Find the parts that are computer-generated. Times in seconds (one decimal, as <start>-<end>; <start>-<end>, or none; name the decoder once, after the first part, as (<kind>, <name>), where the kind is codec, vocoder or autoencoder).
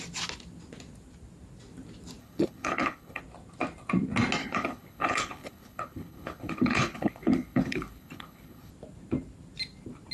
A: 2.2-3.2 (codec, HILCodec); 4.4-8.7